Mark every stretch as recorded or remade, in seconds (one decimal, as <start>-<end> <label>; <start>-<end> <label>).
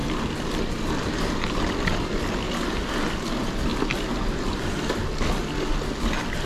0.0-6.5 recorded